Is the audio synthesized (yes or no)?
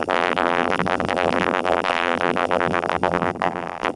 yes